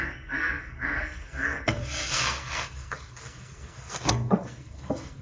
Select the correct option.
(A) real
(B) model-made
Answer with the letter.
B